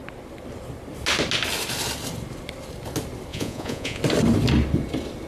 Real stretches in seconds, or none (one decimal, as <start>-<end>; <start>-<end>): 0.0-3.3; 4.0-5.3